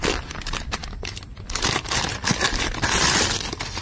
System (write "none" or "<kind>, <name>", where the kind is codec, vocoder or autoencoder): vocoder, BigVGAN v2